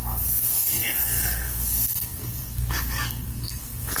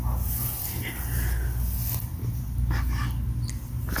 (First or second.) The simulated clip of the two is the first